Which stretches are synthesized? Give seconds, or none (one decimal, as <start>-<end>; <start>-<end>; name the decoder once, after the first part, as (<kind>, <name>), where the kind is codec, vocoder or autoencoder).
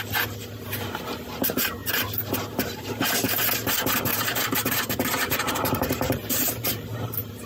1.8-3.3 (vocoder, BigVGAN v2); 4.1-7.5